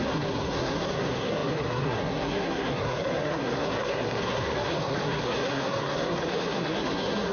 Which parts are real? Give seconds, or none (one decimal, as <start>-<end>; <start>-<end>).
none

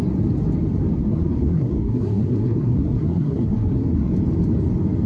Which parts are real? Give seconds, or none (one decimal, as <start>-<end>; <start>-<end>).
0.0-1.0; 4.1-5.1

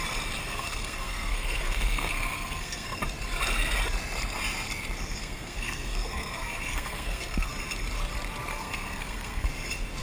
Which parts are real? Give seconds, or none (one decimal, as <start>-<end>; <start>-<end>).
0.0-0.4; 3.0-5.2; 7.5-8.5; 9.5-10.0

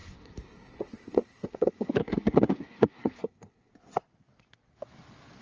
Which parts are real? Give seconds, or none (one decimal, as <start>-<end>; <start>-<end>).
3.7-5.4

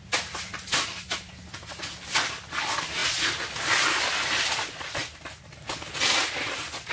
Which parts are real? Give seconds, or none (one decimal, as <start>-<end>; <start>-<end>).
0.0-6.9

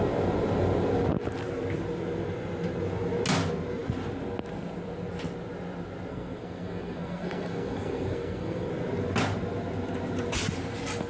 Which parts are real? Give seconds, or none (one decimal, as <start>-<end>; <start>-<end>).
0.0-6.1; 8.7-11.1

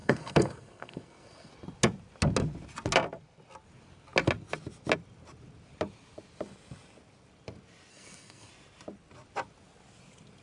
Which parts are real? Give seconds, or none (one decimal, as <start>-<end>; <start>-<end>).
1.5-7.9; 8.5-10.4